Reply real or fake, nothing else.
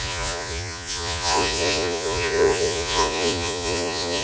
fake